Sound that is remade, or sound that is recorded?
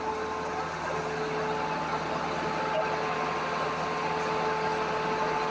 recorded